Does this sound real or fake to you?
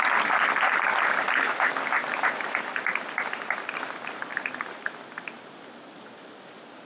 real